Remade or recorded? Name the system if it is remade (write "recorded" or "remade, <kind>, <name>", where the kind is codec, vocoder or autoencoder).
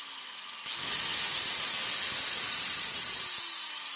recorded